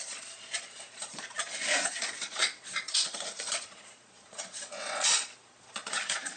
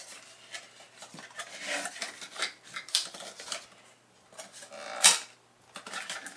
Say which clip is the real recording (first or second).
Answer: second